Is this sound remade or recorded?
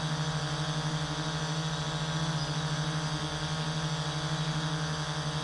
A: recorded